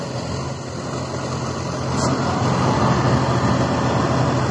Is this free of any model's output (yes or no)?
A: yes